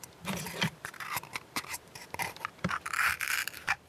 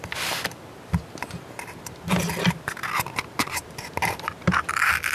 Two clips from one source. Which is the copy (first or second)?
first